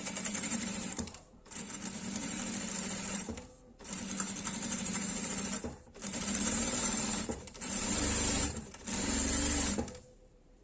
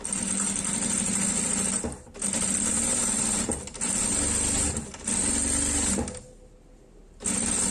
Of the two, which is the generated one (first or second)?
first